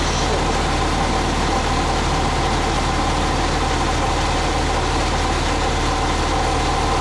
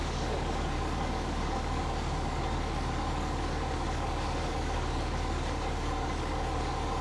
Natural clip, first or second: first